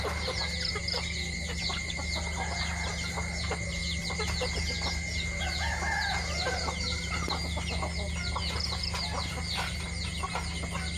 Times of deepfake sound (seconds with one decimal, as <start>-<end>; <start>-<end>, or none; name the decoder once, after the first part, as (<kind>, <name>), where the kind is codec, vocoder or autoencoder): none